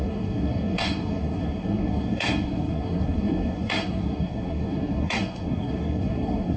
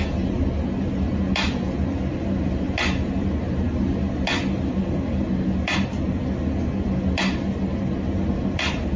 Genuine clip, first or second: second